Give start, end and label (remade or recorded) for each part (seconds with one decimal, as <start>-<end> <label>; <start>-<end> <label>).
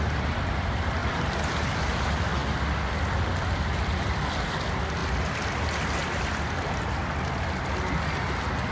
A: 0.0-8.7 recorded